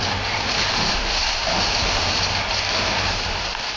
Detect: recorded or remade recorded